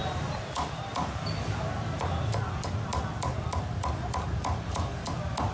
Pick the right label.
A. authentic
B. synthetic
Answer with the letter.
A